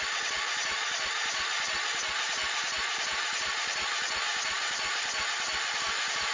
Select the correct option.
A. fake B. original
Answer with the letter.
B